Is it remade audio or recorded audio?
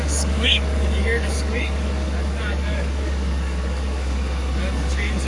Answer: remade